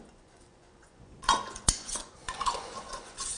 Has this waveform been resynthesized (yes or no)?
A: yes